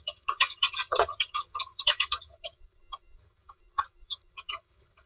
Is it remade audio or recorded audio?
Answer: remade